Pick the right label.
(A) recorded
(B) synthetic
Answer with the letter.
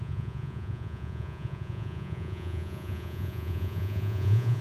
B